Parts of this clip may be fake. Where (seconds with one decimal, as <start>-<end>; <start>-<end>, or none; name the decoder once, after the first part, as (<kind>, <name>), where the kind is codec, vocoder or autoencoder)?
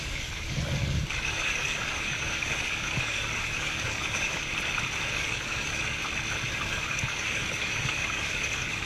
0.0-4.5 (codec, DAC); 5.1-6.0; 6.5-8.9